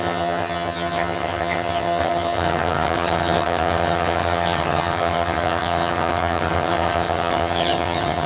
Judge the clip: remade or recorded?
remade